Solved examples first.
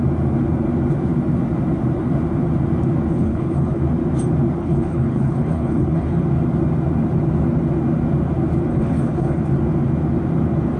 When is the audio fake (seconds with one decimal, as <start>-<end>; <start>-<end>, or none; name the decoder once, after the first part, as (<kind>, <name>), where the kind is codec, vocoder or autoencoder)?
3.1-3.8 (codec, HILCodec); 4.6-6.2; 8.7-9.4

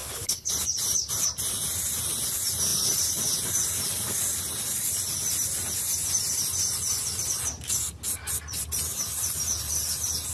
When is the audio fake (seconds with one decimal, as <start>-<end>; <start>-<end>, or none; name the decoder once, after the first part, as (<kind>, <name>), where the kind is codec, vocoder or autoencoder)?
0.0-0.5 (codec, HILCodec)

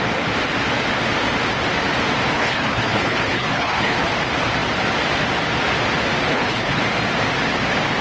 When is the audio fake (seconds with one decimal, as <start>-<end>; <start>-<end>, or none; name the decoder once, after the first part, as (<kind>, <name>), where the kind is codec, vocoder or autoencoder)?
2.3-4.1 (codec, HILCodec); 6.3-6.8

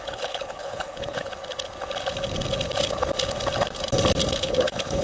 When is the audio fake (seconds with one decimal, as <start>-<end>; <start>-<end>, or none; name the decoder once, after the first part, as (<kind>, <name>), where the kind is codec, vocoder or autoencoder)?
0.0-1.3 (codec, HILCodec); 4.3-5.0

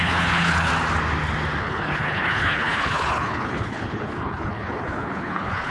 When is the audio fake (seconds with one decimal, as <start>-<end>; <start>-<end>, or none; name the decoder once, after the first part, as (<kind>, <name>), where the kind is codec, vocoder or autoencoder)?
0.0-0.7 (codec, HILCodec); 1.6-5.7

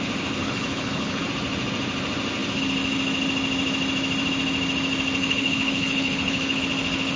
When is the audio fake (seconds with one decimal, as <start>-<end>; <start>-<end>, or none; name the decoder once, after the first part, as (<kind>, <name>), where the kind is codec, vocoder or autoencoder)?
0.4-1.3 (codec, HILCodec); 5.2-6.6

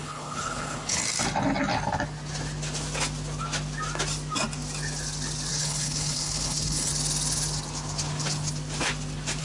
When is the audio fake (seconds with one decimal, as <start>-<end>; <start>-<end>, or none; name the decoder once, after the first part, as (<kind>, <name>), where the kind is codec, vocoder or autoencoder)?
0.0-1.0 (codec, HILCodec); 5.5-6.9

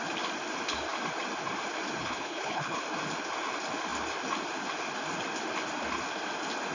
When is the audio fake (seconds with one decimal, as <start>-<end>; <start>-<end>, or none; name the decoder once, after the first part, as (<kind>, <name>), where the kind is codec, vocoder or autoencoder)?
2.0-2.8 (codec, HILCodec)